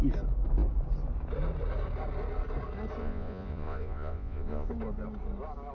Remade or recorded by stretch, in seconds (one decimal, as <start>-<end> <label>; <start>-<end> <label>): 0.0-3.0 recorded; 3.0-4.7 remade; 4.7-5.7 recorded